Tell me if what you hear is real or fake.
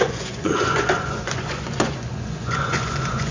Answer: fake